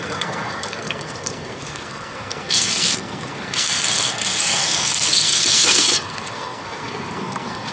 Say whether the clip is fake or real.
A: fake